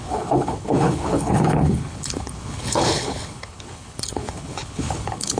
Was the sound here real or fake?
fake